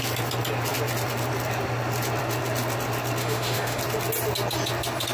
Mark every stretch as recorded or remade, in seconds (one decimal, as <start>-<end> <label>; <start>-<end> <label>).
0.0-3.2 recorded; 3.2-3.8 remade; 3.8-5.1 recorded